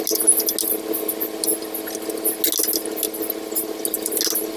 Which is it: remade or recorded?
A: recorded